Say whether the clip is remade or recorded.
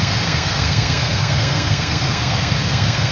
remade